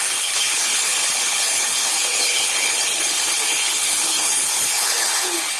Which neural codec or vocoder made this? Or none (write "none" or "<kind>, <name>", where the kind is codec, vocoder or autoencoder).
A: codec, HILCodec